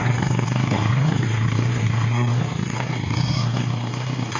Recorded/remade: remade